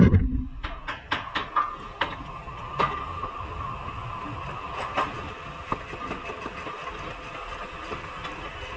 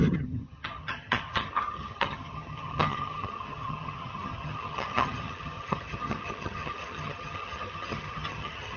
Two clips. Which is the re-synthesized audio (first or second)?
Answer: second